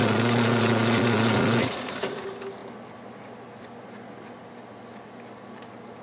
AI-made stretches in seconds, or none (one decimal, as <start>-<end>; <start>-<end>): 0.0-1.9